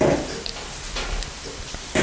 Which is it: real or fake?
real